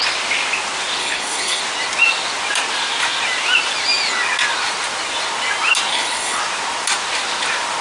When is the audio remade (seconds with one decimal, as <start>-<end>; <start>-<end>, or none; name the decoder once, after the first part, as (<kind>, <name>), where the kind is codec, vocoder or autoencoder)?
1.0-1.6 (codec, HILCodec); 5.9-6.4